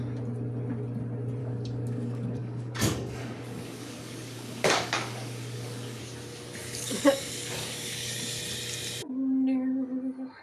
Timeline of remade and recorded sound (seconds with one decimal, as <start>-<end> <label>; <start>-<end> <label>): 0.0-1.4 recorded; 1.4-6.0 remade; 6.0-6.6 recorded; 6.6-8.4 remade; 8.4-10.4 recorded